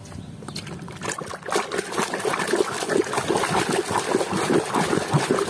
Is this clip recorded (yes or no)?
yes